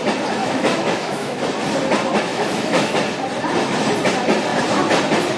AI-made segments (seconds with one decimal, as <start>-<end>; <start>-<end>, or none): 0.4-1.4; 2.3-2.9